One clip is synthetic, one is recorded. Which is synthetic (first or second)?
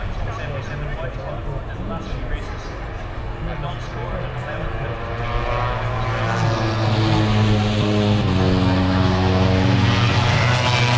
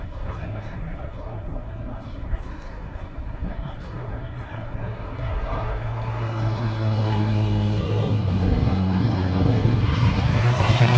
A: second